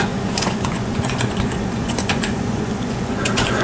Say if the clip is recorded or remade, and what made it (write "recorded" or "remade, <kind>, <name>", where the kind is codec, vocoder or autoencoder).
remade, vocoder, Vocos